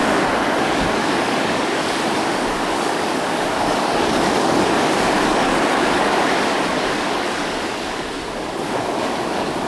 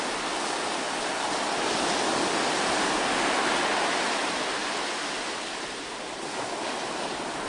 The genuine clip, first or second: second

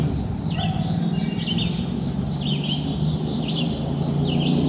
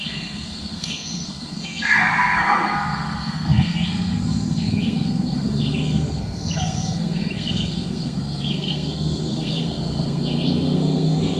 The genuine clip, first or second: first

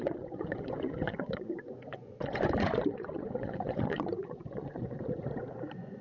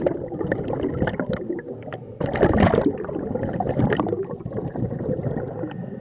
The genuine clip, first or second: second